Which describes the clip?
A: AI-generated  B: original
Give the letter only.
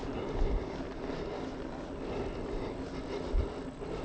B